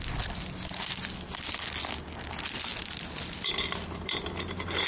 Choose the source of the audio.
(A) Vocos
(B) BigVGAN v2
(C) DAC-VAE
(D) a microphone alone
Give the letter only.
D